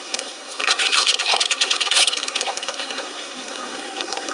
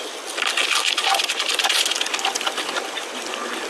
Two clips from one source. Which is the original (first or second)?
second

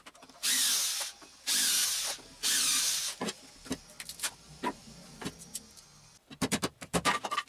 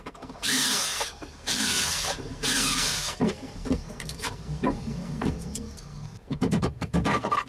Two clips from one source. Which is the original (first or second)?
first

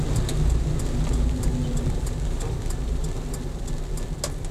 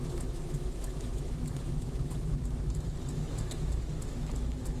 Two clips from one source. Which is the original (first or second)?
first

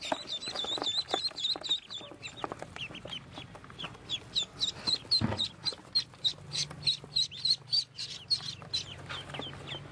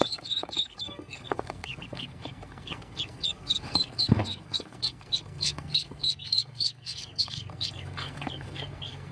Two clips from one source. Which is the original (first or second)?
first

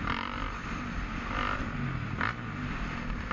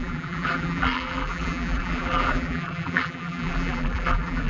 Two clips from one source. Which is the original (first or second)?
first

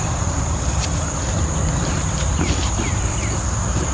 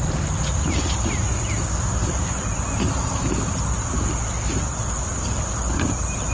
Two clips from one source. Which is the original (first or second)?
second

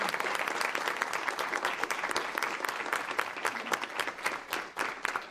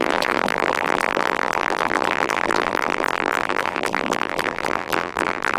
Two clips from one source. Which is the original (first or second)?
first